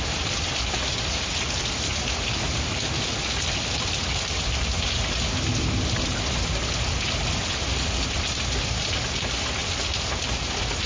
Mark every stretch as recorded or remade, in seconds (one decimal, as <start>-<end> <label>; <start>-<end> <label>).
0.0-10.9 recorded